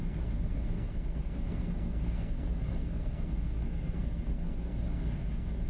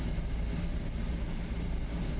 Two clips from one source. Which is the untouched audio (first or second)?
second